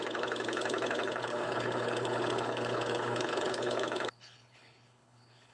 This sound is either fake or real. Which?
fake